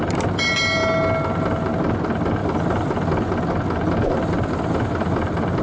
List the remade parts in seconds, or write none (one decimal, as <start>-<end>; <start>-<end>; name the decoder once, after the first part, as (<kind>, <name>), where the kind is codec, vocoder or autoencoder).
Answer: none